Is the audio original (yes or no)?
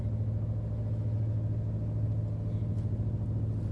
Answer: yes